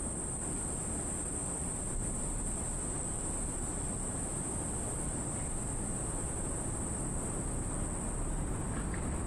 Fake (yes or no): no